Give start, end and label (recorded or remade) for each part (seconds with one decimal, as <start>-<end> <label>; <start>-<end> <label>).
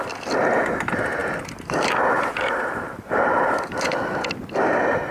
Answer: 0.0-1.2 recorded; 1.2-4.3 remade; 4.3-5.1 recorded